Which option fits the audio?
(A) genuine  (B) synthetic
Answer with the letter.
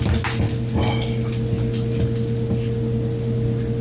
A